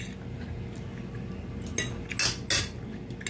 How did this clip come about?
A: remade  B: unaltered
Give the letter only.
B